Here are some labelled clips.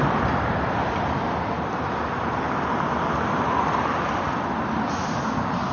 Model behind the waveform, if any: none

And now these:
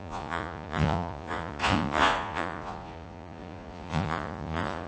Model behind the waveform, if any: vocoder, Vocos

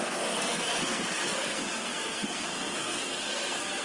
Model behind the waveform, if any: codec, SNAC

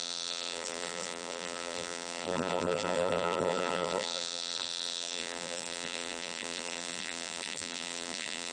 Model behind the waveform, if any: vocoder, BigVGAN v2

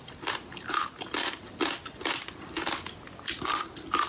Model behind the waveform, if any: none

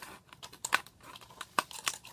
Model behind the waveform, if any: none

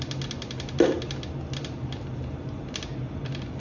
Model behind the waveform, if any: none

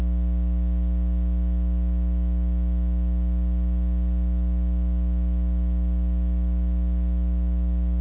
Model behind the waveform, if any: none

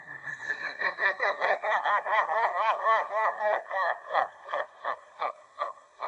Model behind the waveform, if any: codec, SNAC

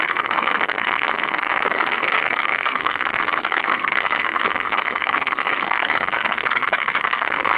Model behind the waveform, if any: codec, SNAC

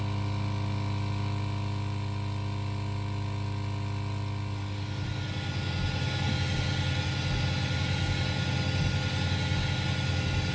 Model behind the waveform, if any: none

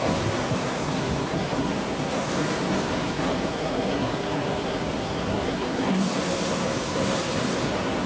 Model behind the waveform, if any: codec, SNAC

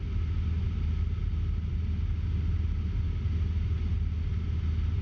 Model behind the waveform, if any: none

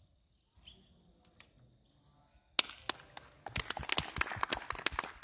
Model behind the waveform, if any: none